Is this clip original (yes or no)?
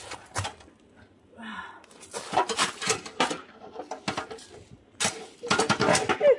yes